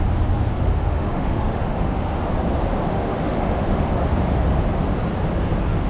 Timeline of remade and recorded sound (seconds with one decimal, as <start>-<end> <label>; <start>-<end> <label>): 0.0-0.5 recorded; 0.5-2.2 remade; 2.2-2.9 recorded; 2.9-3.9 remade; 3.9-5.9 recorded

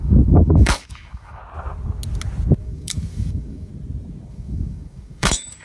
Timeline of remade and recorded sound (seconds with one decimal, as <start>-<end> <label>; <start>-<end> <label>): 0.0-1.4 remade; 1.4-2.6 recorded; 2.6-3.7 remade; 3.7-4.3 recorded; 4.3-5.6 remade

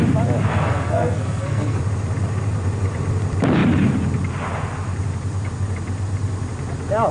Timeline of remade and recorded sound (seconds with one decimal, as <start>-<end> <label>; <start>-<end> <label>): 0.0-0.5 recorded; 0.5-1.8 remade; 1.8-7.1 recorded

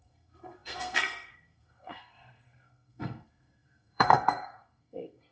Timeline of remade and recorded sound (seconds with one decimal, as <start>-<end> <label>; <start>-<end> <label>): 0.0-5.3 remade

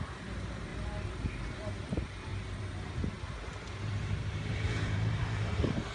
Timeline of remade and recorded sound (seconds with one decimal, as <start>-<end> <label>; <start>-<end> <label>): 0.0-0.7 remade; 0.7-1.7 recorded; 1.7-2.3 remade; 2.3-3.8 recorded; 3.8-5.9 remade

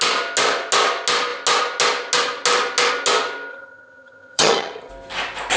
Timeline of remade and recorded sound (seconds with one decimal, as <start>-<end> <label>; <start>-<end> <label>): 0.0-3.5 recorded; 3.5-4.9 remade; 4.9-5.6 recorded